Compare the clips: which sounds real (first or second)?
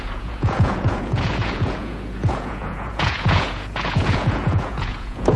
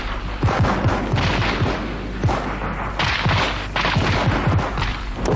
second